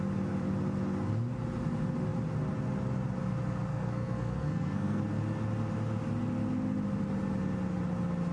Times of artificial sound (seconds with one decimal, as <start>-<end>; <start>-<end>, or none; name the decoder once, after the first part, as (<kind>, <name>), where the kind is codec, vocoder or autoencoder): 3.7-5.0 (codec, SNAC)